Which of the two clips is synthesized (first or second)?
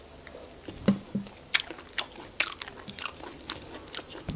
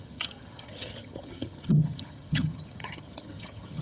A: second